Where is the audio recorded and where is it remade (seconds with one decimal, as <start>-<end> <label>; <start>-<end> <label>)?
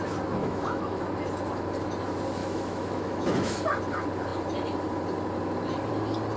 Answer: 0.0-0.4 recorded; 0.4-1.0 remade; 1.0-2.4 recorded; 2.4-3.6 remade; 3.6-6.4 recorded